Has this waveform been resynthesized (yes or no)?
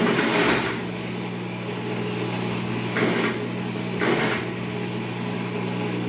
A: no